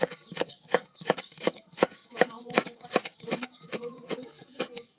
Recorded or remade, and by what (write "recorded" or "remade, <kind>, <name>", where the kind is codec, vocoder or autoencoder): remade, codec, DAC